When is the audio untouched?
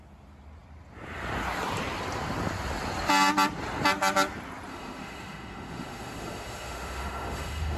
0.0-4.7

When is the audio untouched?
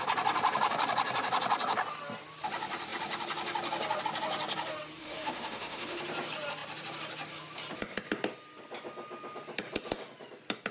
0.0-5.0; 6.0-10.7